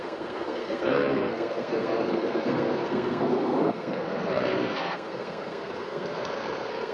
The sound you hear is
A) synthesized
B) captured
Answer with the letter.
A